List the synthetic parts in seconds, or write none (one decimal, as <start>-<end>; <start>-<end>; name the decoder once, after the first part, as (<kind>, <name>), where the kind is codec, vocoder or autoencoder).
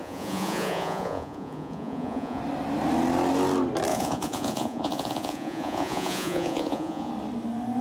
0.0-2.4 (vocoder, Vocos); 3.9-7.1